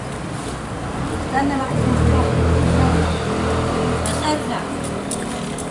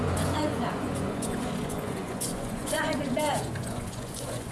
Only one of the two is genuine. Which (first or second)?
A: first